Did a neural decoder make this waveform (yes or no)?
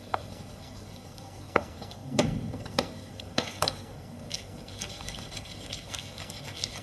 yes